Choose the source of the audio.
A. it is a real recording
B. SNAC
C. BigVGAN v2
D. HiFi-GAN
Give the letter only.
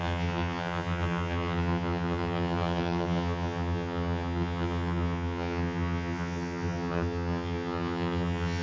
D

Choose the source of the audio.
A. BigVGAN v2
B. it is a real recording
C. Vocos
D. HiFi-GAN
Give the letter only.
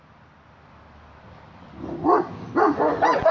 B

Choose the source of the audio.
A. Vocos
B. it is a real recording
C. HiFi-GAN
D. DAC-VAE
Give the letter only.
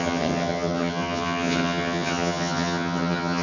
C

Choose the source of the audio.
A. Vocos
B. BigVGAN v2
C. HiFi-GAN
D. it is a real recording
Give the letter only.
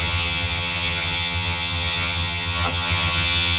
C